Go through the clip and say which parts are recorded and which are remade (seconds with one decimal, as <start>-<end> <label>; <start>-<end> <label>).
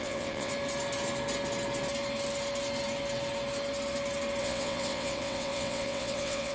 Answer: 0.0-0.5 remade; 0.5-4.4 recorded; 4.4-6.5 remade